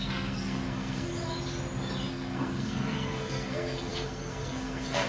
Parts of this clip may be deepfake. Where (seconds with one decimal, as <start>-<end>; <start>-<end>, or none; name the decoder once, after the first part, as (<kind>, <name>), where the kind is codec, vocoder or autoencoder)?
0.0-1.1 (codec, SNAC); 2.1-5.1